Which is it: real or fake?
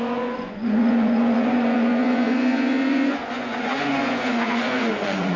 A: fake